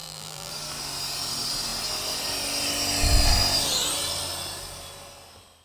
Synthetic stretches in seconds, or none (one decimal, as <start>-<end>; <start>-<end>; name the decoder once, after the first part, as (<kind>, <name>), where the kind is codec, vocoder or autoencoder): 0.0-0.5 (vocoder, BigVGAN v2)